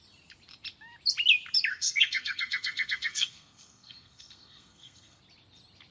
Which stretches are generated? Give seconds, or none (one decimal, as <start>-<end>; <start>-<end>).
1.7-5.2